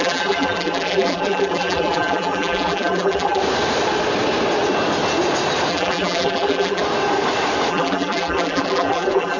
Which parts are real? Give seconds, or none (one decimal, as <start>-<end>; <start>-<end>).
3.4-5.7; 6.8-7.7